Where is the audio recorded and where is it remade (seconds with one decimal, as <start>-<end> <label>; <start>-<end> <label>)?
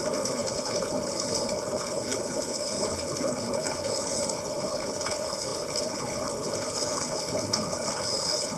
0.0-8.6 remade